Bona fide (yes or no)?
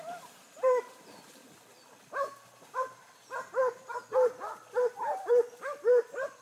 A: yes